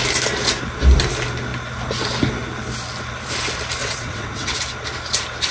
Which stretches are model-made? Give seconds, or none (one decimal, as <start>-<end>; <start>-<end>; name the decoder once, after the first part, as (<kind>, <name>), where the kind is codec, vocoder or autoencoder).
3.8-4.6 (vocoder, WaveNeXt)